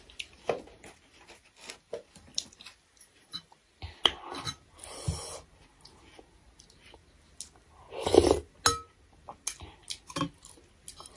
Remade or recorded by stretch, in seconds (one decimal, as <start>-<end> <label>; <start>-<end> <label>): 0.0-2.3 recorded; 2.3-3.6 remade; 3.6-11.2 recorded

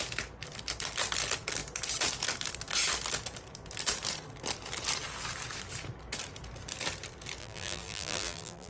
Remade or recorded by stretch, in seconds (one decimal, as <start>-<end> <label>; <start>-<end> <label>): 0.0-7.4 recorded; 7.4-8.7 remade

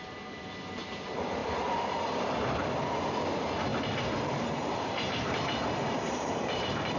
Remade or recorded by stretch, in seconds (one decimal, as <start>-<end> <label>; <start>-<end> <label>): 0.0-1.4 recorded; 1.4-2.2 remade; 2.2-3.7 recorded; 3.7-7.0 remade